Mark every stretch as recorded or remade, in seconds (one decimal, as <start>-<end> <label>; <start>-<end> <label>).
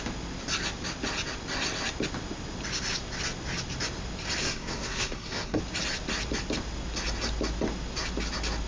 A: 0.0-4.4 recorded; 4.4-5.6 remade; 5.6-8.7 recorded